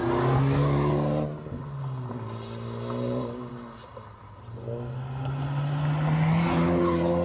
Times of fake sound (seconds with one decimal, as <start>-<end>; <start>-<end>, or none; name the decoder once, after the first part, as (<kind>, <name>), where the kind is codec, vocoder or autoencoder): none